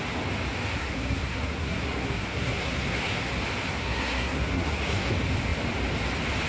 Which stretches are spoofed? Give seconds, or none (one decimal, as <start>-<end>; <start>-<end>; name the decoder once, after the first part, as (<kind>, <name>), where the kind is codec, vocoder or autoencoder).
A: 0.8-3.3 (codec, SNAC); 3.8-5.1